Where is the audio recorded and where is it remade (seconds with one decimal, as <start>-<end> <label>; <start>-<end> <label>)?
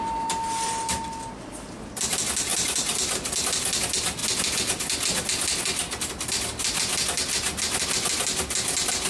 0.0-2.5 recorded; 2.5-3.4 remade; 3.4-9.1 recorded